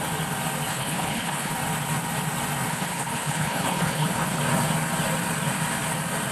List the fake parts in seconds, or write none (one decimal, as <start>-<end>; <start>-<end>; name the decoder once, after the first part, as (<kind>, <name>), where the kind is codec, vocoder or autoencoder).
0.7-1.5 (codec, HILCodec); 2.7-4.4